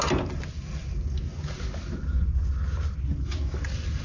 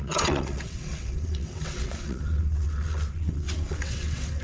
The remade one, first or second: second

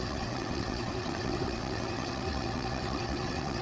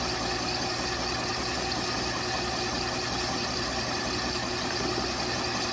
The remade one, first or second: first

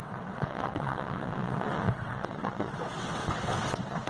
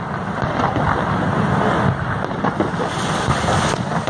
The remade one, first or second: first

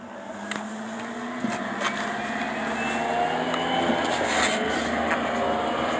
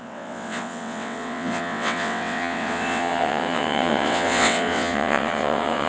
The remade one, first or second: second